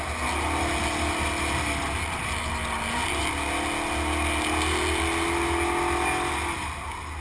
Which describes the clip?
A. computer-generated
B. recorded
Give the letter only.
B